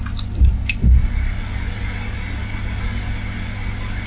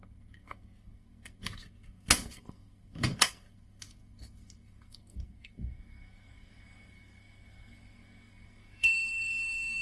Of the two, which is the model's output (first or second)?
second